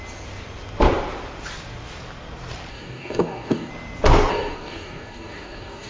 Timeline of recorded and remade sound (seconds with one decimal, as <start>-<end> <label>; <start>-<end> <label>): 0.0-2.7 recorded; 2.7-3.7 remade; 3.7-4.3 recorded; 4.3-5.9 remade